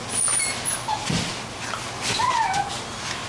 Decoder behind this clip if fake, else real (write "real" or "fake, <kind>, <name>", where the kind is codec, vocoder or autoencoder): real